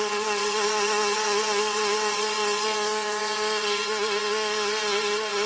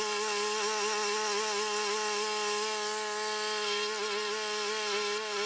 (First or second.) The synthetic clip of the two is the first